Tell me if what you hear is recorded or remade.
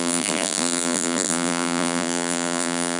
remade